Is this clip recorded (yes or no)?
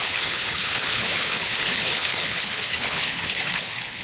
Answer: no